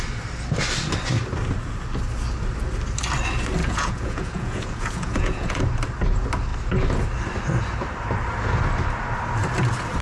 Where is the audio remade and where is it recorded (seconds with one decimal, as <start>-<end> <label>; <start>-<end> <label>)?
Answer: 0.0-3.6 recorded; 3.6-5.6 remade; 5.6-10.0 recorded